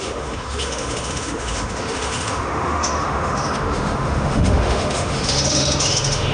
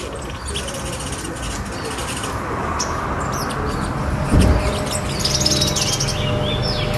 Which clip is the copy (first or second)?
first